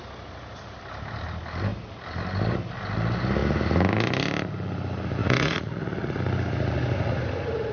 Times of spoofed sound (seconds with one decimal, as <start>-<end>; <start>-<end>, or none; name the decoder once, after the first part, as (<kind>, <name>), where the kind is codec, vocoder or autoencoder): 5.2-6.2 (vocoder, Vocos)